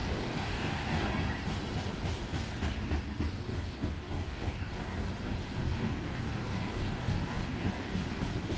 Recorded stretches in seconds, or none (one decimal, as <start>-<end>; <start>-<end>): 1.1-3.5; 5.1-5.6; 8.0-8.6